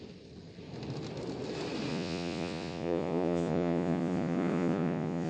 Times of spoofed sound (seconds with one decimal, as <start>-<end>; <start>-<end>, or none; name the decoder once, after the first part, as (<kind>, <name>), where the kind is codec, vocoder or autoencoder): 1.9-5.3 (vocoder, Vocos)

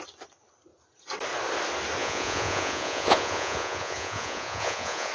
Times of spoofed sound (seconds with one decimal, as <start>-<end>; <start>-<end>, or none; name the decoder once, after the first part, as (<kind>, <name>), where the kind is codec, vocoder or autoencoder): 2.0-5.1 (vocoder, Vocos)

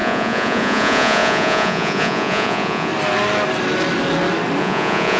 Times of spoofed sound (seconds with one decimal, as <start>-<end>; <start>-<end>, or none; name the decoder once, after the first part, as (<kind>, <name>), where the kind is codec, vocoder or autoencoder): 0.0-2.9 (vocoder, Vocos); 4.6-5.2

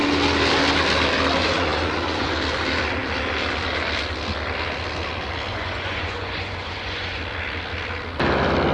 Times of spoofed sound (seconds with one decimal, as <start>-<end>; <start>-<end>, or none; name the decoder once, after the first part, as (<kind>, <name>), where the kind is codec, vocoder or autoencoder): 1.4-2.3 (vocoder, Vocos); 5.5-7.2

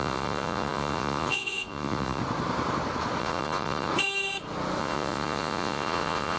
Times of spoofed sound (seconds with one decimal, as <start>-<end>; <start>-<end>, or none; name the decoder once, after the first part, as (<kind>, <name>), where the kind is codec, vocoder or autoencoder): 0.0-2.2 (vocoder, Vocos); 3.2-3.9; 4.8-6.4

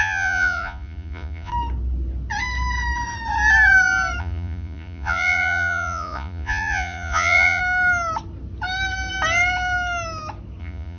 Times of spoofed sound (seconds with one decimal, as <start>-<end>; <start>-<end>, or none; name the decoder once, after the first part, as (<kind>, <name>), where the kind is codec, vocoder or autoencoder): 0.0-1.5 (vocoder, Vocos); 4.2-7.6; 10.6-11.0

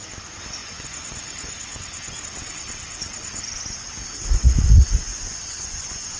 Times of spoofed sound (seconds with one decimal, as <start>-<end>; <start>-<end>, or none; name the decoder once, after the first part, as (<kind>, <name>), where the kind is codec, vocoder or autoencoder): 0.6-2.2 (vocoder, Vocos); 5.1-6.2